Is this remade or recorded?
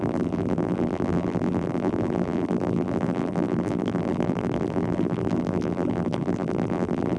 remade